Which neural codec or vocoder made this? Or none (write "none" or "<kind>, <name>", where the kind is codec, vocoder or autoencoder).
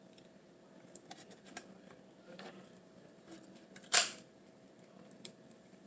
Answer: vocoder, BigVGAN v2